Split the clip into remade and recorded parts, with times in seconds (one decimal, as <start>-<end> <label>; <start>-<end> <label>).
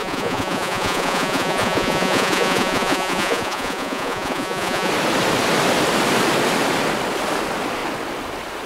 0.0-4.9 remade; 4.9-8.7 recorded